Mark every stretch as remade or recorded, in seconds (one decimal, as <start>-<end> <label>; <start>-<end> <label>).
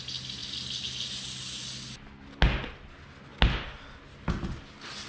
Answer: 0.0-5.1 recorded